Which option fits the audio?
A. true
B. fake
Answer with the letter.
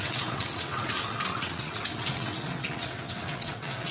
B